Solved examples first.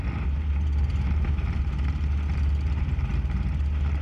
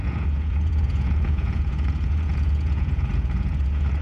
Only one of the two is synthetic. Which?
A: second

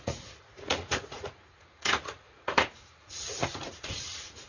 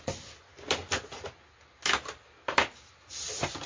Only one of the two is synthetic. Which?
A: first